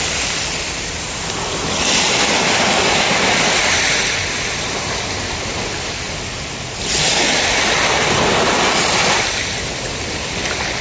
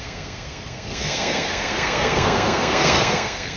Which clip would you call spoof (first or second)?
second